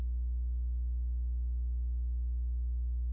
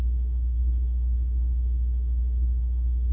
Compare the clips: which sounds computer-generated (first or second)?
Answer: second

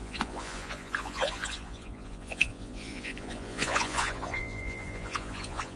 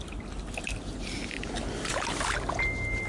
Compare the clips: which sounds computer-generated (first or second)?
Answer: first